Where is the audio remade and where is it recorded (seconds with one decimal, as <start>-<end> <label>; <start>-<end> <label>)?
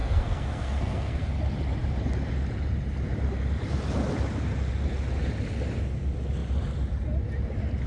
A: 0.0-1.3 remade; 1.3-7.9 recorded